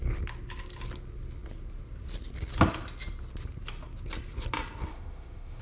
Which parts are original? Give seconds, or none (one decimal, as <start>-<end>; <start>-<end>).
0.0-4.9